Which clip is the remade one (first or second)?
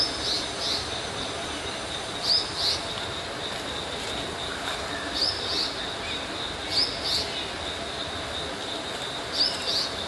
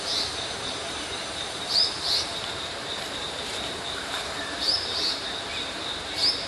second